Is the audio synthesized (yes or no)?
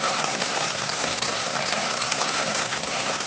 yes